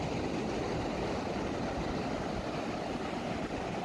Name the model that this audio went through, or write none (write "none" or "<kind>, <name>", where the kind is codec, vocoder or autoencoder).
none